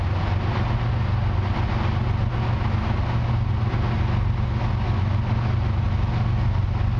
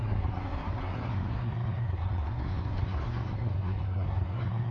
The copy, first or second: second